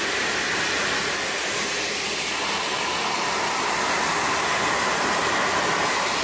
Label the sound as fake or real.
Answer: real